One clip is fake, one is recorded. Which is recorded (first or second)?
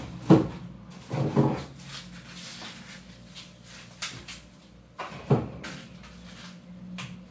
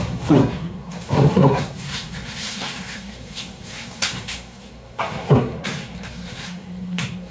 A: first